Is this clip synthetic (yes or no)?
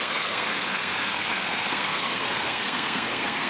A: yes